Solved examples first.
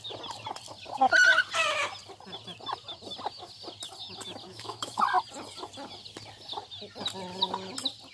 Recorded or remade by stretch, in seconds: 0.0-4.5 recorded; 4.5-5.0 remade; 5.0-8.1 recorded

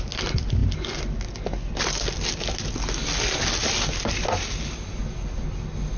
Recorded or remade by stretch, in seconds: 0.0-6.0 recorded

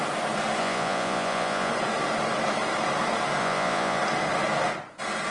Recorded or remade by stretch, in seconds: 0.0-0.6 recorded; 0.6-1.7 remade; 1.7-3.4 recorded; 3.4-4.0 remade; 4.0-5.3 recorded

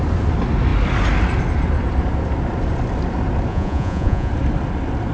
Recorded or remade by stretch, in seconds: 0.0-3.5 recorded; 3.5-4.3 remade; 4.3-5.1 recorded

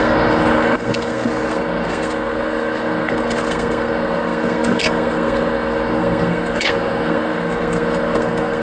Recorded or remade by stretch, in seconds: 0.0-8.6 remade